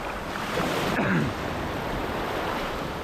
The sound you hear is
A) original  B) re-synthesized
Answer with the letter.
B